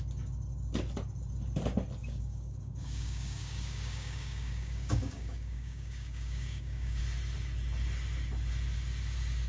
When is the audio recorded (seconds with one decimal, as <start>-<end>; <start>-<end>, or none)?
0.0-2.0; 7.0-9.5